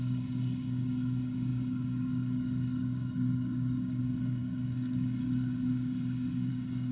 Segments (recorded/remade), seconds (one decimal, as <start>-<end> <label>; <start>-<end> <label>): 0.0-6.9 remade